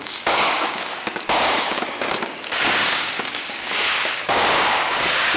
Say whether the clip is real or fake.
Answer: fake